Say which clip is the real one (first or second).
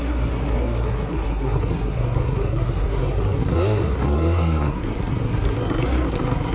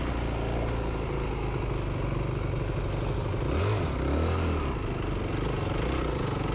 second